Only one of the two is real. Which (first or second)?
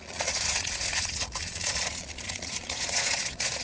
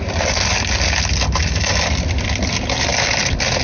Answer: second